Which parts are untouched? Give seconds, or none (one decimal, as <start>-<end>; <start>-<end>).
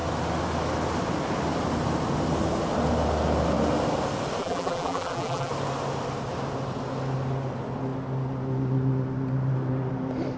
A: 0.0-4.4; 5.5-10.4